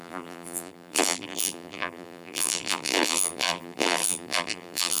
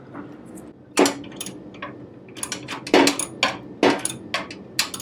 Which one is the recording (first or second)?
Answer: second